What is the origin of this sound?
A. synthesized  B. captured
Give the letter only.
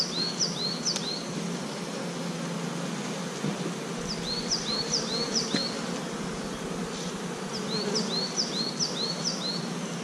B